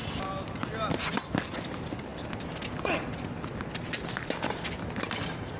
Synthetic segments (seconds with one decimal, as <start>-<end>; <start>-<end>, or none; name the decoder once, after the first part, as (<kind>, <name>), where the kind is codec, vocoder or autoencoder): none